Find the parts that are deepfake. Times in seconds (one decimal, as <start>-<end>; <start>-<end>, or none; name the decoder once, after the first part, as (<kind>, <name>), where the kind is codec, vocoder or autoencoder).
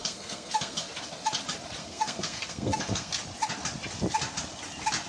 0.0-0.9 (codec, SNAC); 1.8-3.1